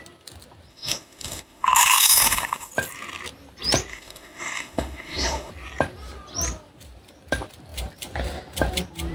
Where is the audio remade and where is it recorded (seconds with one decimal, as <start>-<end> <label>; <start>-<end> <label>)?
0.0-0.7 recorded; 0.7-2.7 remade; 2.7-3.9 recorded; 3.9-5.5 remade; 5.5-9.1 recorded